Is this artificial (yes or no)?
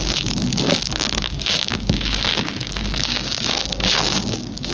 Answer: yes